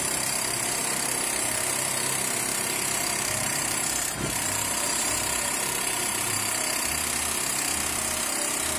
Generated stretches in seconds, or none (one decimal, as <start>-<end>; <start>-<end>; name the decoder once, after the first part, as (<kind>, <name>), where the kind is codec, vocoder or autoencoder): 2.5-6.9 (vocoder, BigVGAN v2)